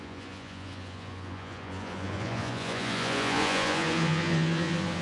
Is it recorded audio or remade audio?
remade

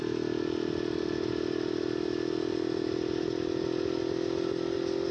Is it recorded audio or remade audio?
recorded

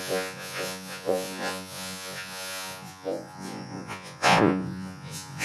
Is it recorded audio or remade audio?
remade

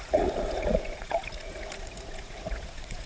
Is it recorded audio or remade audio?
remade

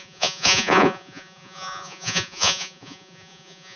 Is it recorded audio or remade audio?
remade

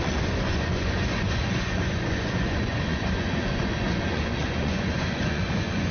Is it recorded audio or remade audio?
remade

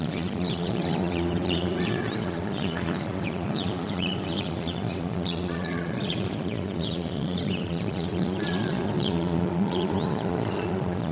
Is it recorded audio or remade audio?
remade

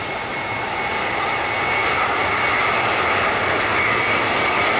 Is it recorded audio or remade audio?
recorded